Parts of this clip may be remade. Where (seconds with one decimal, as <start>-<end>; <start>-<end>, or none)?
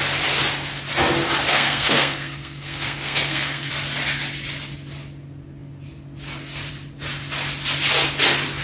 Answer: 1.5-3.7